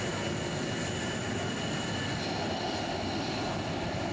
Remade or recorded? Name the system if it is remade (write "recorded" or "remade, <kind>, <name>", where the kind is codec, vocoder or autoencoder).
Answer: recorded